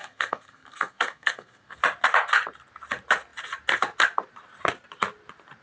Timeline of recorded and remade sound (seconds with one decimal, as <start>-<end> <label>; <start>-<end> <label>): 0.0-1.8 remade; 1.8-5.6 recorded